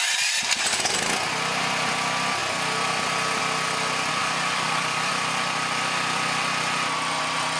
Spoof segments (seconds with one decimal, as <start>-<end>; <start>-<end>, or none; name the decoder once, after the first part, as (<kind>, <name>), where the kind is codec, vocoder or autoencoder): 4.2-5.1 (codec, DAC)